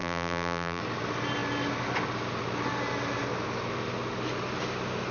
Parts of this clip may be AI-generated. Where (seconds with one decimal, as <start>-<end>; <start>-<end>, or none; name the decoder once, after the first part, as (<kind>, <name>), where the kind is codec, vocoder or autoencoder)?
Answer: 0.0-0.8 (vocoder, BigVGAN v2)